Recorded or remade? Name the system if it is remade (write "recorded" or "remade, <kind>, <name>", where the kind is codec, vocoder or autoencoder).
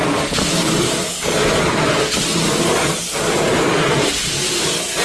recorded